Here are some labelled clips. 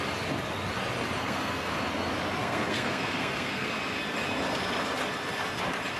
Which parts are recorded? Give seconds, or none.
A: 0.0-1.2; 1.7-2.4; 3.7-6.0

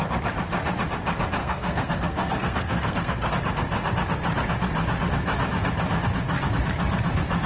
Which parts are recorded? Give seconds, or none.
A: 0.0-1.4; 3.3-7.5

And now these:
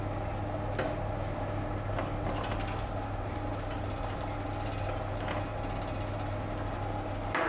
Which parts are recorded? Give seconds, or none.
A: 0.0-7.5

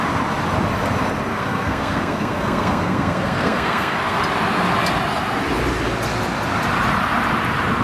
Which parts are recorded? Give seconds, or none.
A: 0.0-1.3; 4.2-7.8

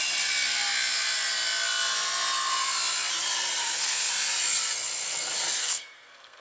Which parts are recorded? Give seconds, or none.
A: 0.0-3.6; 4.1-5.6

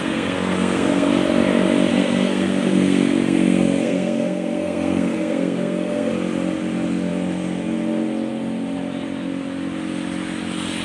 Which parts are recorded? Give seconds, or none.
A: 1.1-1.9; 6.1-10.8

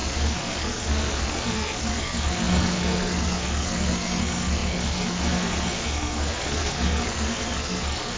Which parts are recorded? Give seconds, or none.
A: none

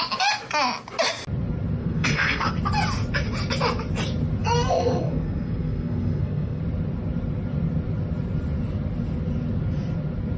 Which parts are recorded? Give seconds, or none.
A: 0.0-1.8; 2.5-4.4; 6.6-10.4